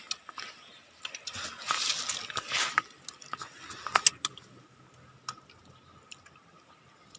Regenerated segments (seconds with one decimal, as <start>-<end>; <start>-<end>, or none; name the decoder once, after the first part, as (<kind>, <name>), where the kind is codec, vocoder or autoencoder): none